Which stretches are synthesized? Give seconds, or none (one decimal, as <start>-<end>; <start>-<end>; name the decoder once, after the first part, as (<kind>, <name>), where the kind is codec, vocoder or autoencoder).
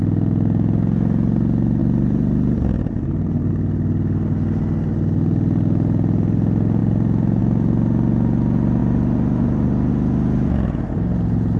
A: 1.8-3.5 (vocoder, BigVGAN v2); 6.8-7.4; 8.8-9.9